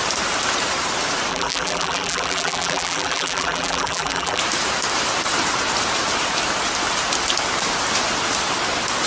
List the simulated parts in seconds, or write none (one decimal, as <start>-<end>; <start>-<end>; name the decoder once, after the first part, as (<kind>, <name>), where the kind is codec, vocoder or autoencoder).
1.3-4.4 (vocoder, BigVGAN v2)